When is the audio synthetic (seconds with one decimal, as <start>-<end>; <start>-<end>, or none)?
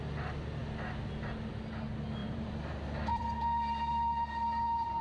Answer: 2.2-2.7; 3.1-5.0